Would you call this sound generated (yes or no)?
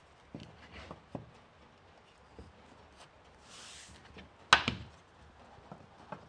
no